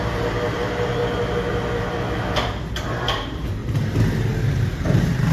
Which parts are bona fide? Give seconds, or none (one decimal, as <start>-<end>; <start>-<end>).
1.0-2.8; 3.6-4.5